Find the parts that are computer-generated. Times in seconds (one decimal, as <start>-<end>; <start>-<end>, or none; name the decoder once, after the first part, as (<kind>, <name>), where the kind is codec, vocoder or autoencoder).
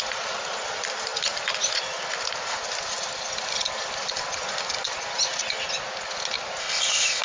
6.6-7.2 (codec, ZipCodec)